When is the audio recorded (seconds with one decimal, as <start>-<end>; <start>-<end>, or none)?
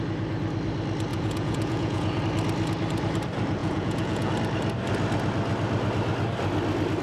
0.0-1.1; 2.2-3.6; 4.3-7.0